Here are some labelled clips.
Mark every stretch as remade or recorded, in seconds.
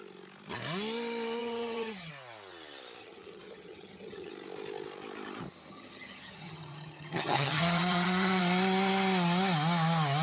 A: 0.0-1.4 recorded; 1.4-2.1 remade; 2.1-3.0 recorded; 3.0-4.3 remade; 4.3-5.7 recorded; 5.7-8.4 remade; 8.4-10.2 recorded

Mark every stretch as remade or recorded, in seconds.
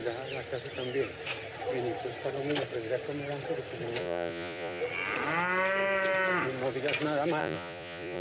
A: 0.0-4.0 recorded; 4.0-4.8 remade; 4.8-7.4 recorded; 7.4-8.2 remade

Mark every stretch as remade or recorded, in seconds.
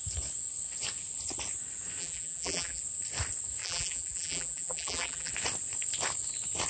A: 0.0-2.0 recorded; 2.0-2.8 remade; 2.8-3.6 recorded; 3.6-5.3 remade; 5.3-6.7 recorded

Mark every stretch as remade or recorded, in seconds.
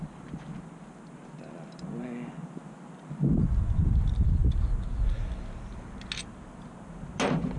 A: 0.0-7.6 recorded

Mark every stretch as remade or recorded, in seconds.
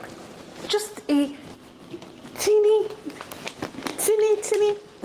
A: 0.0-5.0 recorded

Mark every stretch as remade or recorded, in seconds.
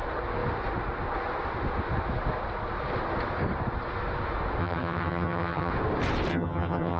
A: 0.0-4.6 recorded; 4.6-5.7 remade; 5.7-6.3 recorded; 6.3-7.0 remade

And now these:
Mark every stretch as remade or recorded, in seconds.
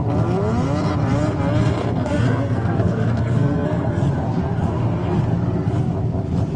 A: 0.0-1.8 recorded; 1.8-3.9 remade; 3.9-6.6 recorded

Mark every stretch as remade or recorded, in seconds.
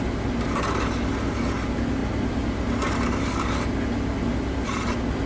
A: 0.0-5.3 recorded